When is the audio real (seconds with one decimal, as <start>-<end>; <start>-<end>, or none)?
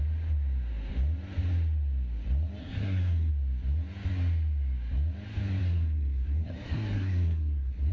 0.0-2.6; 3.3-5.6